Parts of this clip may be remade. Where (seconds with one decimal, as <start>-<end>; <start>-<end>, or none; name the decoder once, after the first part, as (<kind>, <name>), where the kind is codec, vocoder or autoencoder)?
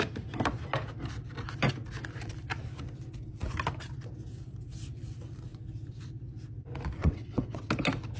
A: 7.0-7.7 (vocoder, WaveNeXt)